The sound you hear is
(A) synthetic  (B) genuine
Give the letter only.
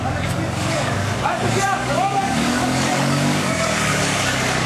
A